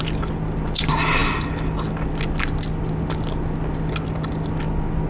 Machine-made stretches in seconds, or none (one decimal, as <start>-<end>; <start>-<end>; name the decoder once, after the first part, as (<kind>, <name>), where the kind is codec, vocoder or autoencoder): none